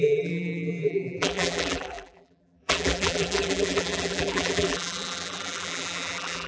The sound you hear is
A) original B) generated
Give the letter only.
B